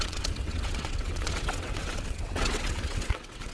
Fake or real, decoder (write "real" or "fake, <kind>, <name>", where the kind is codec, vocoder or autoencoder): fake, vocoder, WaveNeXt